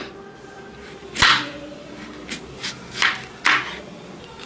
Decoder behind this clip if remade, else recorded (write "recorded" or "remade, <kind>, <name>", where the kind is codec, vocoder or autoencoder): recorded